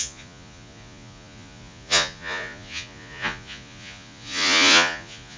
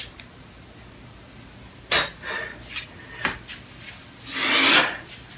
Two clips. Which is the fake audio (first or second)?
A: first